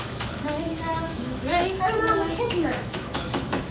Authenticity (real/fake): fake